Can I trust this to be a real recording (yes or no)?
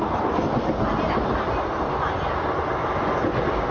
yes